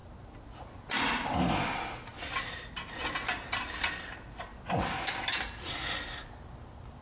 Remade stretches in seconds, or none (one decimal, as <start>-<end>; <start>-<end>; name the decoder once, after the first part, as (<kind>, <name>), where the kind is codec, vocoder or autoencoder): none